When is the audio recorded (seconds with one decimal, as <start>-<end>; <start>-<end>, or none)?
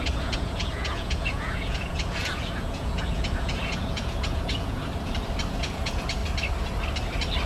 4.8-5.5; 6.2-7.5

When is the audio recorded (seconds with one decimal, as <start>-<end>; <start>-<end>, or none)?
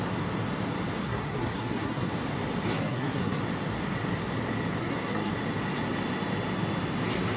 0.0-1.0; 2.1-2.7; 3.4-4.8; 5.3-7.4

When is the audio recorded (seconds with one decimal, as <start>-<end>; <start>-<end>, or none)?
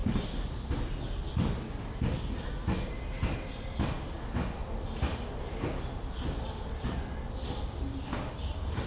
0.0-3.8; 4.6-5.4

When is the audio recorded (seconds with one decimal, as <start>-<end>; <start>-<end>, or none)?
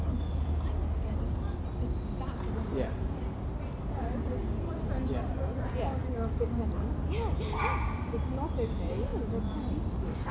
0.0-10.3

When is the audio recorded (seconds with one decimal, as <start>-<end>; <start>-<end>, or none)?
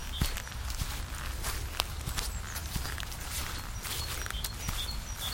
0.5-2.6; 3.5-5.3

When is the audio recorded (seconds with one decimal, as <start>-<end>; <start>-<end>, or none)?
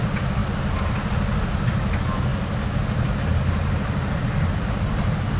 0.0-5.4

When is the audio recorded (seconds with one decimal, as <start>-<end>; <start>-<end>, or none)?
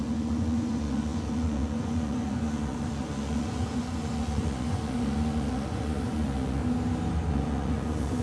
6.6-7.3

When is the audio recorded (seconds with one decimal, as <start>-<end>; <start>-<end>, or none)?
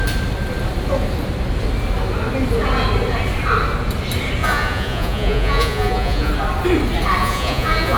0.0-4.4; 6.3-7.2